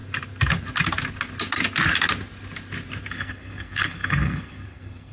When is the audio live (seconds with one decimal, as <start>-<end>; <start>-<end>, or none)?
0.0-3.1

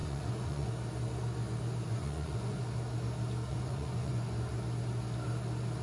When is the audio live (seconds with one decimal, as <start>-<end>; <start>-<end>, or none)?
0.7-1.9; 2.6-3.5; 4.5-5.8

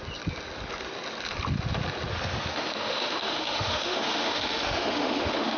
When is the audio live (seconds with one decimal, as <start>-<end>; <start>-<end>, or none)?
0.0-2.1

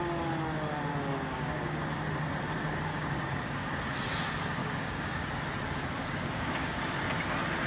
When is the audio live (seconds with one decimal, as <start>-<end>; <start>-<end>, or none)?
0.0-0.9; 1.8-2.9; 3.8-4.6; 5.3-6.0; 6.8-7.7

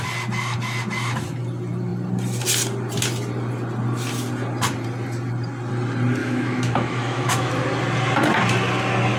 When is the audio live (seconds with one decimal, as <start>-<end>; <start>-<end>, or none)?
0.0-6.2; 7.5-9.2

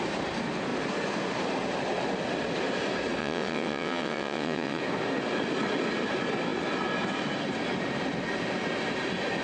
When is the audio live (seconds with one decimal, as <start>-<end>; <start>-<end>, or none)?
0.0-3.2; 4.8-9.4

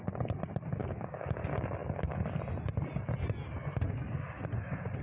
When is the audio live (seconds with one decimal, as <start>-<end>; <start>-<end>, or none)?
0.0-0.8; 1.4-5.0

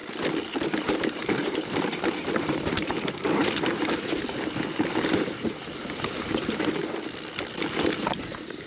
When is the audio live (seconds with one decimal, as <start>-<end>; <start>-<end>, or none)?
0.0-0.6; 6.8-8.0